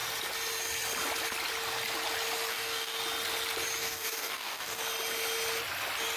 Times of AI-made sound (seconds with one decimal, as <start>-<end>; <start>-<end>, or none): 2.5-3.0; 3.8-4.8